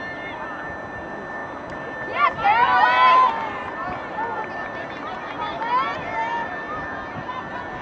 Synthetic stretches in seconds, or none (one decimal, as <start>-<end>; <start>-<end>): none